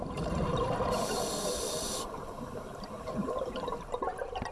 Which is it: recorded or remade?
remade